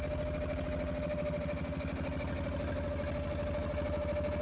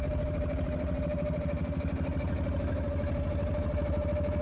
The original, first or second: first